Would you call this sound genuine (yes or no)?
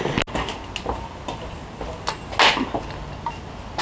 yes